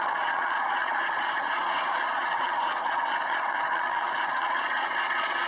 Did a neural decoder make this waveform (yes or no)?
yes